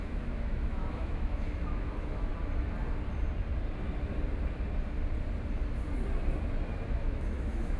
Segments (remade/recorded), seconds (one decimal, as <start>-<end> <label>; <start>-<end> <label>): 0.0-2.3 remade; 2.3-6.9 recorded; 6.9-7.8 remade